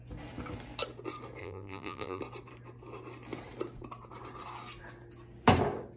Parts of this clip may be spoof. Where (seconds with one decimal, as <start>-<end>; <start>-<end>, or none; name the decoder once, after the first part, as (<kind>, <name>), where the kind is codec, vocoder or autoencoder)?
1.4-2.2 (vocoder, BigVGAN v2)